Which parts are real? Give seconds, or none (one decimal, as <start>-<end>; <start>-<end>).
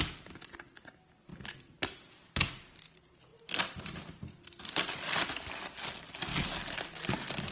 0.0-7.5